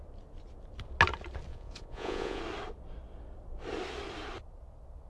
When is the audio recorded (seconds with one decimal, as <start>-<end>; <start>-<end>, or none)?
0.0-1.5; 2.4-5.1